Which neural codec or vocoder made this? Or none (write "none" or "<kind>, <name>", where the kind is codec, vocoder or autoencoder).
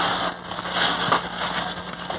none